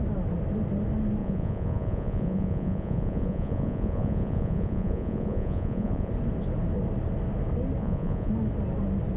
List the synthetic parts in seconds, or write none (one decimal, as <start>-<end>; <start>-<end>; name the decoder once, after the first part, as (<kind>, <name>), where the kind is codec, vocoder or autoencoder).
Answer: 1.2-6.1 (vocoder, Vocos); 7.8-8.3